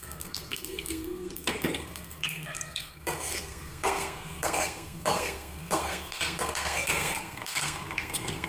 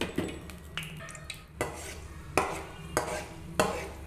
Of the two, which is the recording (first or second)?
second